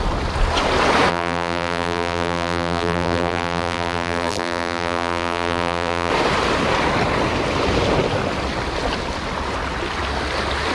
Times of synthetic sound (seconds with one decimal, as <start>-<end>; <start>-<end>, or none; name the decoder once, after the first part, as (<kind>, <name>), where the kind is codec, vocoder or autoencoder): 1.1-6.1 (vocoder, BigVGAN v2)